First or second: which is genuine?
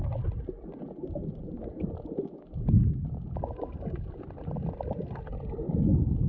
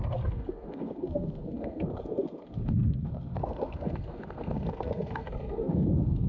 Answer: first